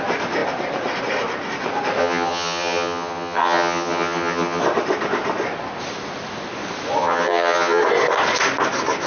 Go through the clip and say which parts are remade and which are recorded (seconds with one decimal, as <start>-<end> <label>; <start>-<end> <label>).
0.0-2.0 recorded; 2.0-4.6 remade; 4.6-7.0 recorded; 7.0-7.8 remade; 7.8-9.1 recorded